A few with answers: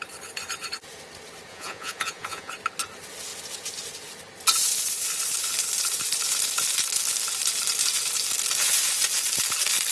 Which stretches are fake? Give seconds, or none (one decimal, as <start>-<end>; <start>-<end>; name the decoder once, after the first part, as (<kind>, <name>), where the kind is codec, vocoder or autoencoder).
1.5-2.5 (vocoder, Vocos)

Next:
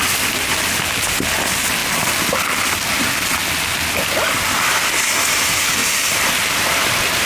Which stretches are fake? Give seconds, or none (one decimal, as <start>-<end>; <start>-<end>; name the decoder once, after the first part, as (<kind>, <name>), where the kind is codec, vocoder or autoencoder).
5.8-7.3 (vocoder, BigVGAN v2)

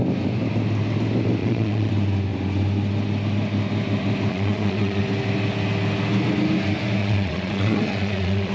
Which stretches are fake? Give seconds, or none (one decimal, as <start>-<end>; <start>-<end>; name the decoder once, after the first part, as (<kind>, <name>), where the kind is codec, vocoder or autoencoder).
1.4-1.9 (vocoder, Vocos); 4.3-5.0; 7.0-8.5

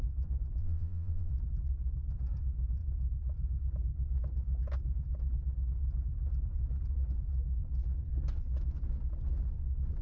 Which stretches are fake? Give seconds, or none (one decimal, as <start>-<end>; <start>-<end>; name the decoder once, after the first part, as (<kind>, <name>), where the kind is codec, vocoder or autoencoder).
0.6-1.3 (vocoder, Vocos)